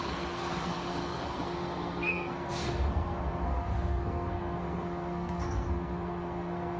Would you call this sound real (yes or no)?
no